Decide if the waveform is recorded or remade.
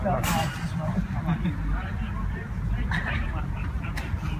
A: remade